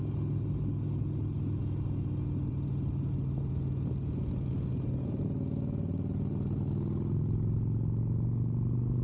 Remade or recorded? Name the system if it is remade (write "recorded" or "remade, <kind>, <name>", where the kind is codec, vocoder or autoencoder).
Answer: recorded